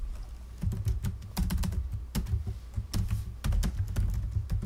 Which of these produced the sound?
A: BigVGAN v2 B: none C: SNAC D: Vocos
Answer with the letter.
B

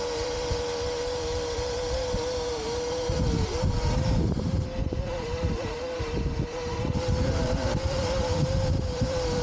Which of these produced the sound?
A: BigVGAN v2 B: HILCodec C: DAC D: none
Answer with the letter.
A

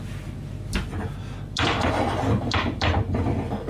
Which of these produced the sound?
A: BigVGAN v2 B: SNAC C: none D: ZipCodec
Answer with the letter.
A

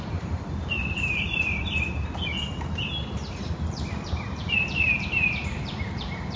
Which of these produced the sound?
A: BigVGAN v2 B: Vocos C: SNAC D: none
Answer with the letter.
A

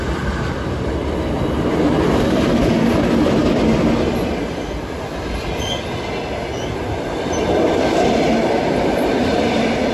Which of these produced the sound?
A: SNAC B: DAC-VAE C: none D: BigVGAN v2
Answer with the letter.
C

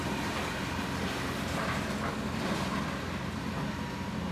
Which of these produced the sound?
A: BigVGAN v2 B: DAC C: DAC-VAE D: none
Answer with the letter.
A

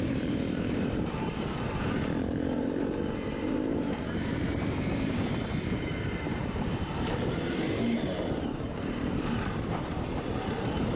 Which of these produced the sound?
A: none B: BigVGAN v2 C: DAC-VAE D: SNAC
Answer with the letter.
B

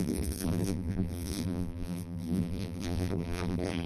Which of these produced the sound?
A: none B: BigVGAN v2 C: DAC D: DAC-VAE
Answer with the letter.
B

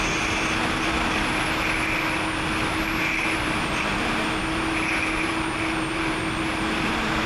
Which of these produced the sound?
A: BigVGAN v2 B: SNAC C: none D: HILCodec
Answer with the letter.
C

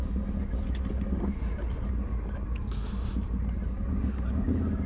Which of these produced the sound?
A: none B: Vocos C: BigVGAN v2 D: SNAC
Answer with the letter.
A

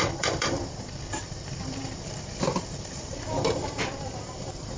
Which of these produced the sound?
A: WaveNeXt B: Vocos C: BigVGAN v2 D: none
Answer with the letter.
C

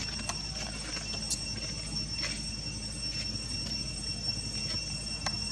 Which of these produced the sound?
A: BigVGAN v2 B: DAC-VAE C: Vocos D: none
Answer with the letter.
D